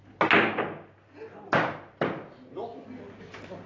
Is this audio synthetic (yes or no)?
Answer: no